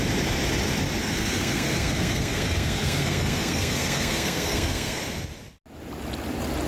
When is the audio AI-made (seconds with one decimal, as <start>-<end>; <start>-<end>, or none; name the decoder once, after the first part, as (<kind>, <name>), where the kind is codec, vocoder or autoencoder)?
1.0-5.0 (codec, SNAC)